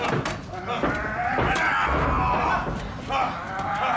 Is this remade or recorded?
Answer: recorded